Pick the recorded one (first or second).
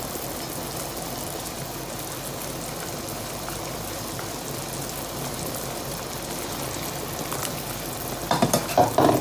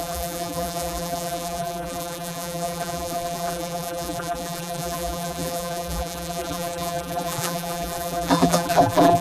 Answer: first